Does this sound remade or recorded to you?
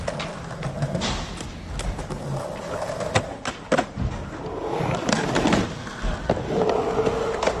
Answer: recorded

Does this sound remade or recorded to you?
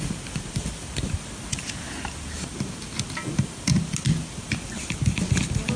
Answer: recorded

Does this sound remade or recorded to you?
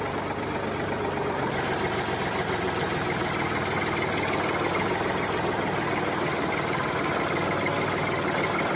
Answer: recorded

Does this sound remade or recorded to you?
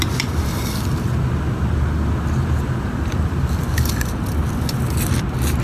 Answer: recorded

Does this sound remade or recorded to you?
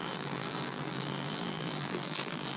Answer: remade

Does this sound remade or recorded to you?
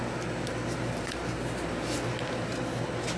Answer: recorded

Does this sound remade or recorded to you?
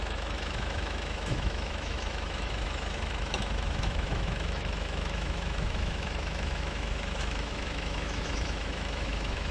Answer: remade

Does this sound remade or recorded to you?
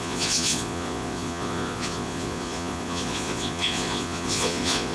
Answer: remade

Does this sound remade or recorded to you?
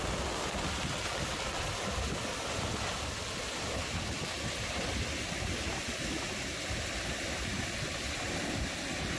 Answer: recorded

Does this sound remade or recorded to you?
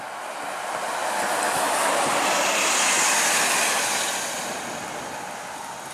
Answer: recorded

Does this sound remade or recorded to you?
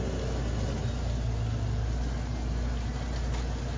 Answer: recorded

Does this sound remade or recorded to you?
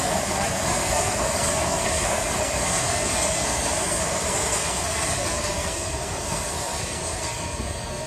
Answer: remade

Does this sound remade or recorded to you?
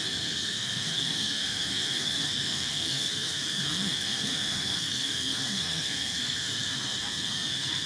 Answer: remade